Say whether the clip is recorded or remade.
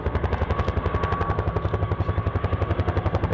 recorded